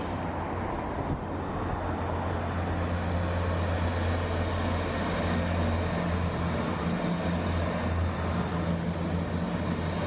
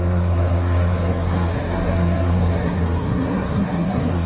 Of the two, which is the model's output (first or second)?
second